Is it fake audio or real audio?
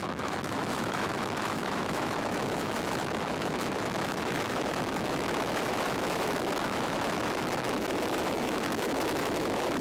fake